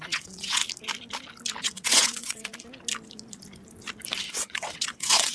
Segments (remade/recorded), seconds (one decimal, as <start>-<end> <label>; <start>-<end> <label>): 0.0-0.6 remade; 0.6-1.6 recorded; 1.6-2.5 remade; 2.5-4.3 recorded; 4.3-5.3 remade